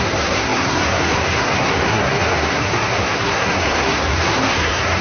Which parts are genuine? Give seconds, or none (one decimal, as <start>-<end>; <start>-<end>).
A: none